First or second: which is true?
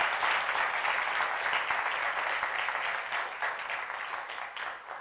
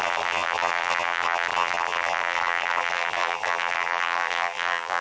first